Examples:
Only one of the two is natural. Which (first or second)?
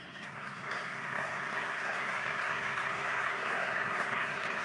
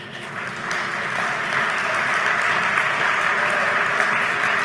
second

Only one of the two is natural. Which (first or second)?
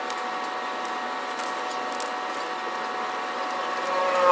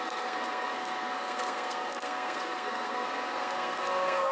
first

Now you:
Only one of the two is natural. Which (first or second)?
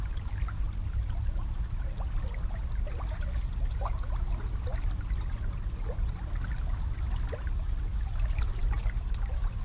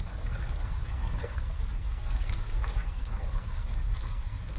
first